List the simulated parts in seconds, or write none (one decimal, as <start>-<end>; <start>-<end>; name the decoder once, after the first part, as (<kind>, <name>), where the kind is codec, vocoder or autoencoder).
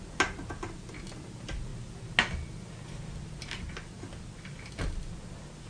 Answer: none